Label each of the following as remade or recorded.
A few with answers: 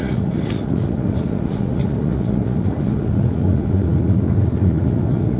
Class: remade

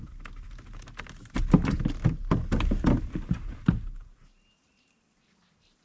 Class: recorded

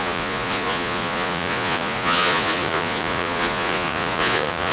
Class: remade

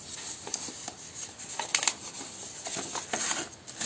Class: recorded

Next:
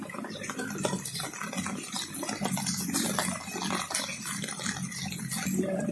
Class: recorded